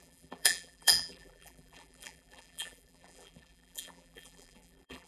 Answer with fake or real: fake